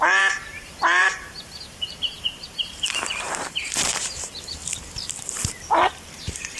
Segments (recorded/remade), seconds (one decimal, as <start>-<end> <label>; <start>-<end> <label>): 0.0-4.6 remade; 4.6-5.9 recorded; 5.9-6.6 remade